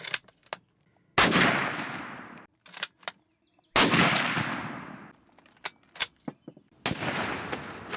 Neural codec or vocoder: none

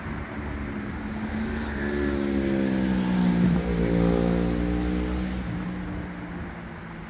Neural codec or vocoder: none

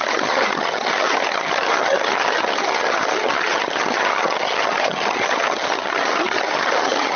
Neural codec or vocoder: vocoder, HiFi-GAN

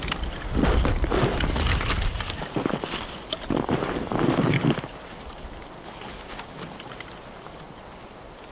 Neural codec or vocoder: none